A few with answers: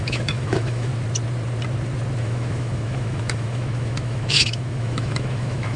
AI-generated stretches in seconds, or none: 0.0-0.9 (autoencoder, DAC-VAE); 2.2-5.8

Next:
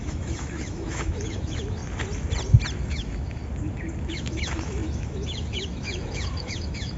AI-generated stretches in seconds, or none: 0.0-1.8 (autoencoder, DAC-VAE); 2.8-3.4; 4.1-7.0

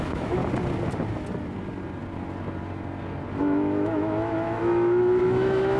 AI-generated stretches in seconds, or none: 0.0-0.4 (autoencoder, DAC-VAE); 3.4-5.8

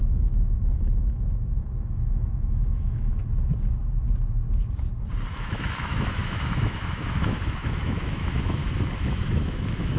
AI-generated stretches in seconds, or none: 0.0-3.1 (autoencoder, DAC-VAE); 5.3-8.6; 9.1-10.0

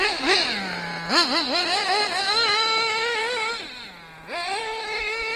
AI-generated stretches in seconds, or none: 0.0-0.9 (autoencoder, DAC-VAE); 2.2-3.2; 4.6-5.4

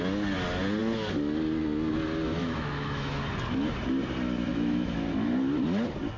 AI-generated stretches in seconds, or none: 2.4-3.2 (autoencoder, DAC-VAE); 4.5-5.1

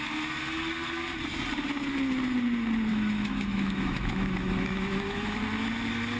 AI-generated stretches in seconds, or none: 2.9-5.4 (autoencoder, DAC-VAE)

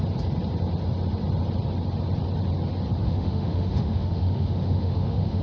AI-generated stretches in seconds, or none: 3.0-5.4 (autoencoder, DAC-VAE)